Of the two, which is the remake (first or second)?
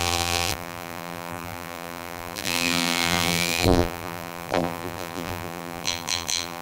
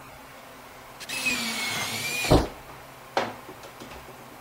first